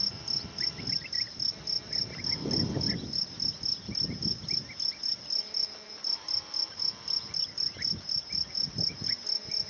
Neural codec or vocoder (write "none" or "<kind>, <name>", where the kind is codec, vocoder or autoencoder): none